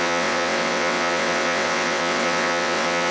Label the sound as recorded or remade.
remade